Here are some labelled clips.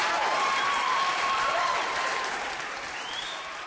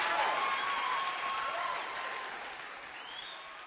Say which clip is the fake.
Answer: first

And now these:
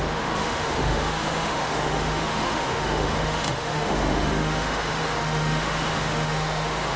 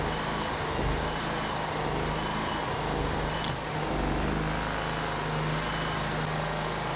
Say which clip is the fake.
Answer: first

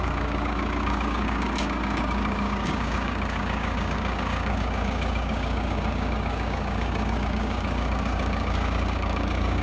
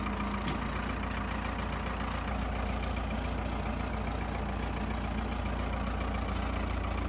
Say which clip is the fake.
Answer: first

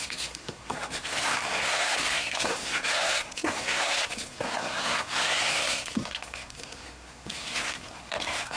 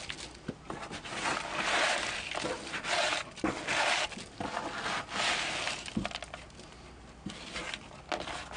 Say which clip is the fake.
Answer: first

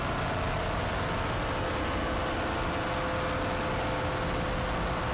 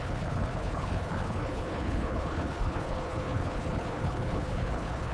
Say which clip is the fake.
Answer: second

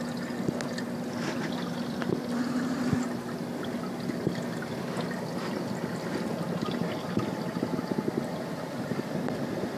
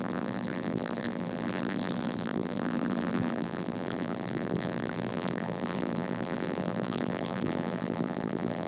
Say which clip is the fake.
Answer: second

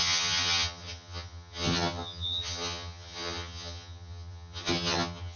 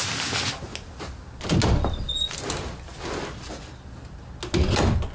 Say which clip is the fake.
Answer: first